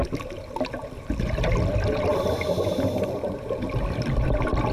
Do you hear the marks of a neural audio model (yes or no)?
no